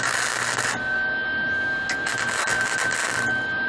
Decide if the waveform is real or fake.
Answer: real